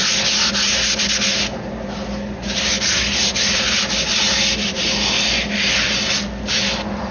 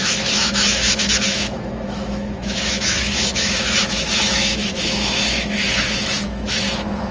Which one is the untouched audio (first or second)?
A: first